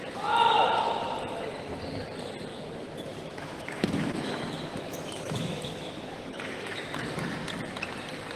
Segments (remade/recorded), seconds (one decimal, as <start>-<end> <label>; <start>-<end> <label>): 0.0-2.5 recorded; 2.5-7.0 remade; 7.0-8.4 recorded